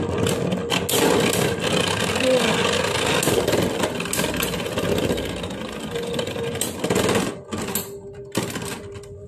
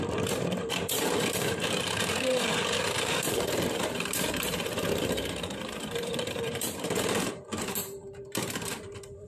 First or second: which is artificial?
second